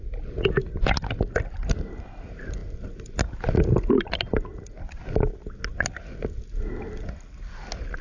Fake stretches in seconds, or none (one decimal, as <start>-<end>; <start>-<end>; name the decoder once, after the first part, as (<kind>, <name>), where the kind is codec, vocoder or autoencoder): none